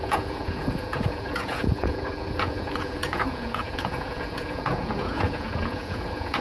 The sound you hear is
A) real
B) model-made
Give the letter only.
B